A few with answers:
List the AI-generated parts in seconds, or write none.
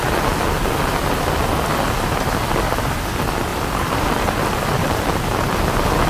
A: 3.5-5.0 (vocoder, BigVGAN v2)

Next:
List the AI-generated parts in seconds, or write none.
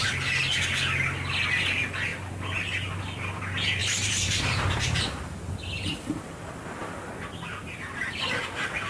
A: 3.8-7.1 (vocoder, BigVGAN v2)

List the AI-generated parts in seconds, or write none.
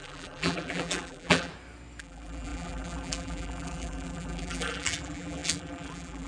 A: 0.0-1.5 (vocoder, BigVGAN v2); 2.0-6.3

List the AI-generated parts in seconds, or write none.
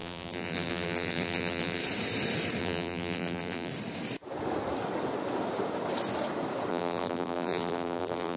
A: 0.0-1.8 (vocoder, BigVGAN v2); 2.6-3.7; 6.7-8.4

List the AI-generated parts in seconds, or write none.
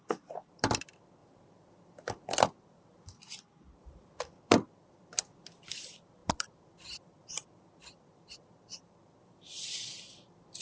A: 0.0-1.2 (vocoder, BigVGAN v2); 2.3-10.6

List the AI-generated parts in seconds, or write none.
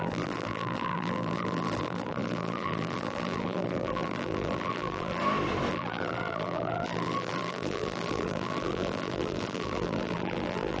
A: 0.0-5.2 (vocoder, BigVGAN v2); 5.7-10.8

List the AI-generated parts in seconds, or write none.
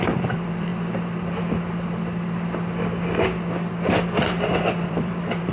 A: 0.0-0.7 (vocoder, BigVGAN v2); 4.0-5.5